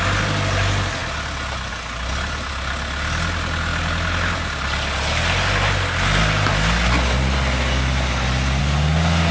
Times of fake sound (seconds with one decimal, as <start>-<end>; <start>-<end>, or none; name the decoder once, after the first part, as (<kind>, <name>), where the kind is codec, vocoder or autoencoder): none